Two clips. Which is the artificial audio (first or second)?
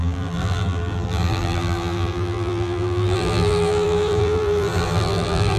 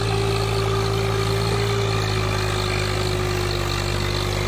first